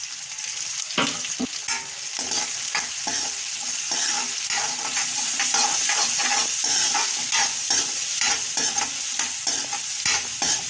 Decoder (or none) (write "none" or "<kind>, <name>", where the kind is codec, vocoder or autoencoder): none